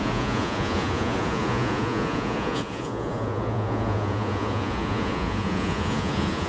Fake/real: fake